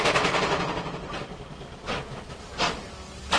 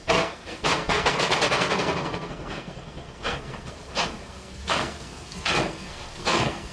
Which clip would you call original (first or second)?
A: first